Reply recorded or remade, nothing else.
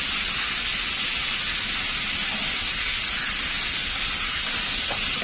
recorded